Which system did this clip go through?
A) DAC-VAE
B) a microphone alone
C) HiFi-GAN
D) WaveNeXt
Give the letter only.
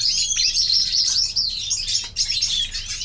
B